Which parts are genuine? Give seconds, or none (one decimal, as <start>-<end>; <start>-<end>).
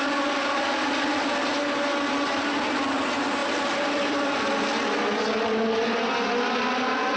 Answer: 0.0-3.4; 4.5-7.2